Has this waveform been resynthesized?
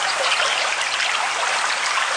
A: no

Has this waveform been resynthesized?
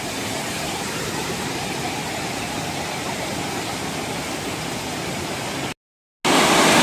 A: no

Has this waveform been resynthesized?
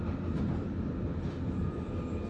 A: yes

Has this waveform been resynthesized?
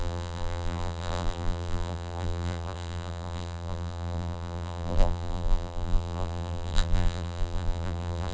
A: yes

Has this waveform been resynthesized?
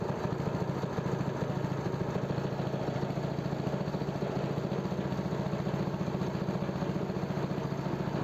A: no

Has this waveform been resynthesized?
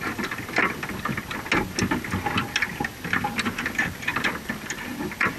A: no